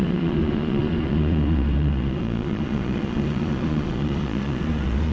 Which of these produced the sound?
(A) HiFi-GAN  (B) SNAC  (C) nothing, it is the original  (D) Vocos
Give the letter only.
D